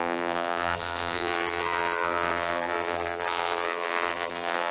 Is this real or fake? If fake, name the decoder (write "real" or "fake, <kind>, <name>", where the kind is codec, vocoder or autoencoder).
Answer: fake, vocoder, BigVGAN v2